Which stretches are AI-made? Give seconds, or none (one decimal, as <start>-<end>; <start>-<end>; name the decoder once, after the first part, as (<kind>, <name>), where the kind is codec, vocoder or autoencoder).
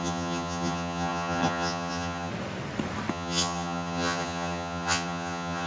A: 0.0-2.3 (vocoder, HiFi-GAN); 3.1-5.7